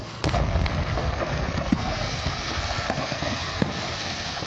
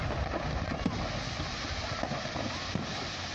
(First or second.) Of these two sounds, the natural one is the second